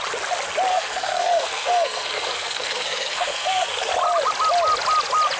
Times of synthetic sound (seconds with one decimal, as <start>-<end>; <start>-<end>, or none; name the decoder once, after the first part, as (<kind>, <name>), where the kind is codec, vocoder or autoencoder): 0.7-3.9 (codec, SNAC)